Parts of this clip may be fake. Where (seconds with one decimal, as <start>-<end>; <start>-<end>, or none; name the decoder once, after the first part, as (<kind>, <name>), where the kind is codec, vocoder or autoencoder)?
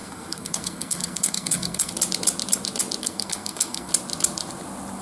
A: 0.0-1.9 (codec, SNAC); 3.0-3.9